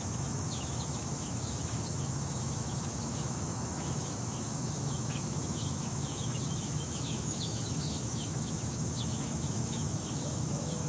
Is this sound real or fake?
fake